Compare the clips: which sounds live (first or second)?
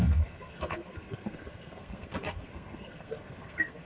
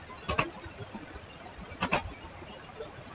second